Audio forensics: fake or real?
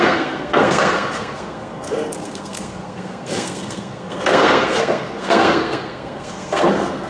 fake